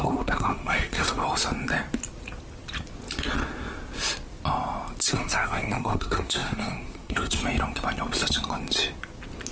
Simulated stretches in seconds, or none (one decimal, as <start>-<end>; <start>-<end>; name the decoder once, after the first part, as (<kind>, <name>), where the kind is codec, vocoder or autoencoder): 0.0-1.2 (codec, SNAC); 5.1-7.4